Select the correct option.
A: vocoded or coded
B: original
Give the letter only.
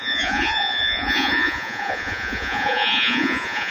A